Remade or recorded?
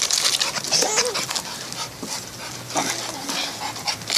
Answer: recorded